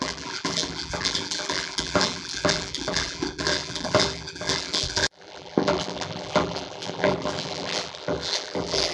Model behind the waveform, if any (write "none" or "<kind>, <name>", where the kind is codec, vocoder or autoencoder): vocoder, BigVGAN v2